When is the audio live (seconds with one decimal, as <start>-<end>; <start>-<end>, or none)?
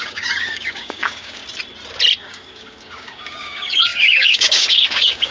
1.4-2.2